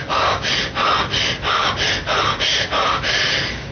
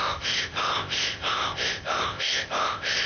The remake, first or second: second